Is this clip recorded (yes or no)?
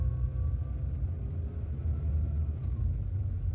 yes